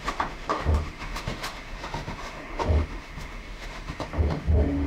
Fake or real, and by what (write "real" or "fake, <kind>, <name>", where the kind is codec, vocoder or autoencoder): fake, autoencoder, DAC-VAE